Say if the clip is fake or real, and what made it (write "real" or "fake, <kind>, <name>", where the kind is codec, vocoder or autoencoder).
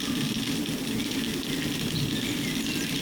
real